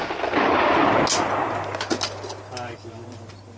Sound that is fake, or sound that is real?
real